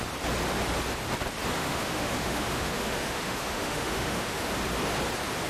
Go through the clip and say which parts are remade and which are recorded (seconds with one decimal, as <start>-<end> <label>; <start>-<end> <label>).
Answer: 0.0-1.6 recorded; 1.6-4.5 remade; 4.5-5.5 recorded